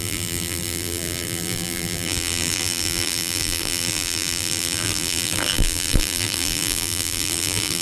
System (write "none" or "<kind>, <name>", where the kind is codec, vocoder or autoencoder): vocoder, BigVGAN v2